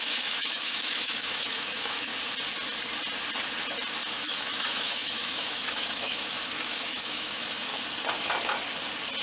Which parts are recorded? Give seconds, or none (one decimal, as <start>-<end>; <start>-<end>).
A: 2.1-4.1; 7.7-9.2